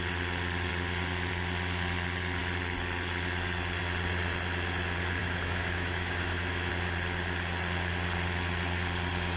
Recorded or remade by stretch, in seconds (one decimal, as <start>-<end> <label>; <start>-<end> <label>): 0.0-5.2 recorded; 5.2-6.7 remade; 6.7-9.4 recorded